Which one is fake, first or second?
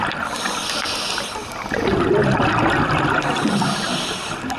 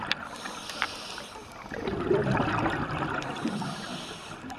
second